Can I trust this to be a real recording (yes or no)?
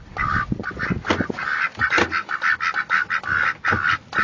yes